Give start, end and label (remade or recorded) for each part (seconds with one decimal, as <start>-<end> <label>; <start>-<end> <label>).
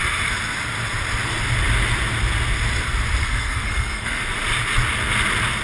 0.0-3.2 recorded; 3.2-4.2 remade; 4.2-5.6 recorded